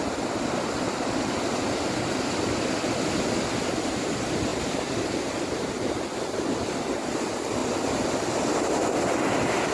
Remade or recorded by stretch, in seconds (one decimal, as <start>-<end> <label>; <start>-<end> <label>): 0.0-9.7 recorded